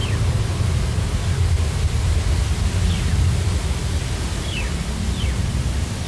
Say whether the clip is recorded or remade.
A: recorded